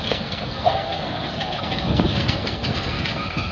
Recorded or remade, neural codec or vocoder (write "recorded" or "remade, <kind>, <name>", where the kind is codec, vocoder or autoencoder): remade, codec, SNAC